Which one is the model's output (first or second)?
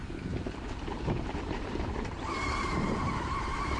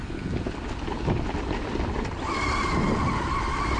first